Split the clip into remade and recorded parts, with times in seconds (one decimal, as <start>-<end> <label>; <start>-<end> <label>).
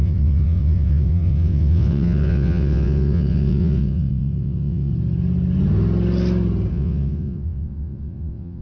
0.0-4.9 remade; 4.9-6.7 recorded; 6.7-8.6 remade